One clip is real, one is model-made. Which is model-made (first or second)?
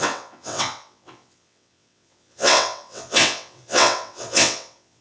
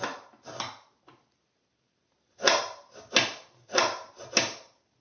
first